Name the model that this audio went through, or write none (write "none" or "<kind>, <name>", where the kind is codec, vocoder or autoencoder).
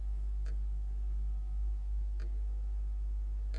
none